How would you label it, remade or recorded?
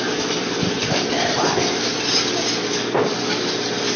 recorded